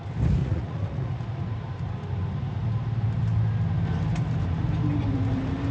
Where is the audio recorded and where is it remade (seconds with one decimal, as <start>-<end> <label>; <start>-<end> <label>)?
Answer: 0.0-0.4 recorded; 0.4-1.2 remade; 1.2-5.7 recorded

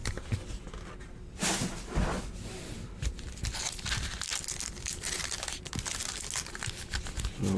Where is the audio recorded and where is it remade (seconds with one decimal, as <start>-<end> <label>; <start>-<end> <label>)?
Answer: 0.0-7.6 recorded

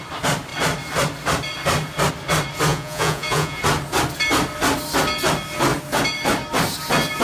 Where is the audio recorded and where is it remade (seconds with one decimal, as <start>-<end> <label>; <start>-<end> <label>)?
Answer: 0.0-2.7 recorded; 2.7-3.6 remade; 3.6-7.2 recorded

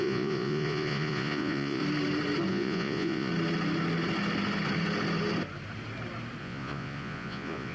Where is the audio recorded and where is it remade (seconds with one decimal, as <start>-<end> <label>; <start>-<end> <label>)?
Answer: 0.0-1.8 remade; 1.8-2.5 recorded; 2.5-3.3 remade; 3.3-6.4 recorded; 6.4-7.7 remade

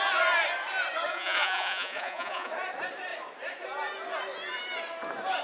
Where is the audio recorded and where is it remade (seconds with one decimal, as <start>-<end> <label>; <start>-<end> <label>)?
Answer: 0.0-1.1 recorded; 1.1-2.5 remade; 2.5-5.4 recorded

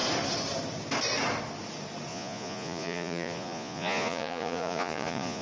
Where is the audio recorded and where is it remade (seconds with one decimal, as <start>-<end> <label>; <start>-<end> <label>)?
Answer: 0.0-2.1 recorded; 2.1-5.4 remade

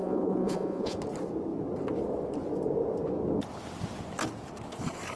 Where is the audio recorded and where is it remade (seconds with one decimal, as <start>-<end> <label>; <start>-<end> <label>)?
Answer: 0.0-1.0 remade; 1.0-5.2 recorded